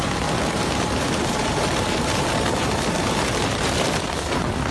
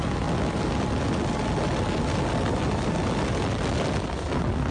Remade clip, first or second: first